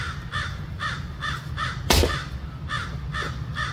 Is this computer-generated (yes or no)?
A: no